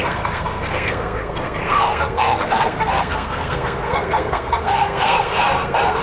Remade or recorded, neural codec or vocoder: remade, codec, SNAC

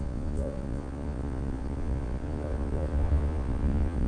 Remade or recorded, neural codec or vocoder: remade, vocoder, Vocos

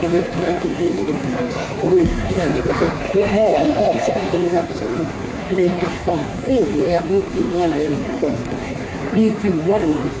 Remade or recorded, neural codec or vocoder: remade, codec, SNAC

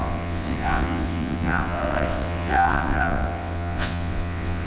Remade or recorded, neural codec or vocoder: remade, vocoder, WaveNeXt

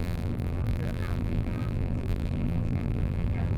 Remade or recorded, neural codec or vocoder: remade, vocoder, BigVGAN v2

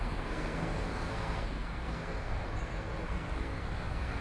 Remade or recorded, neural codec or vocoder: remade, codec, SNAC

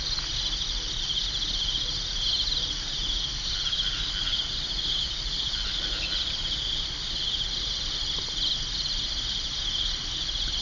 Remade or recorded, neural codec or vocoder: recorded